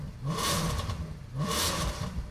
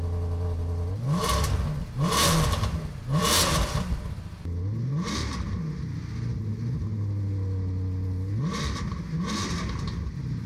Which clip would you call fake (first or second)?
first